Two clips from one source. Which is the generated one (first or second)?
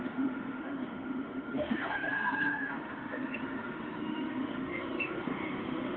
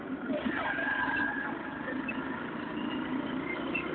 first